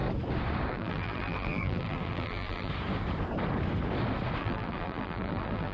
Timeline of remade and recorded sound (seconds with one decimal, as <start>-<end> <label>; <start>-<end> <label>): 0.0-0.7 recorded; 0.7-2.7 remade; 2.7-4.4 recorded; 4.4-5.7 remade